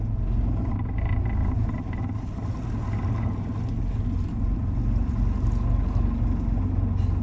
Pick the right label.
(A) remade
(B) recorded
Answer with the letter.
B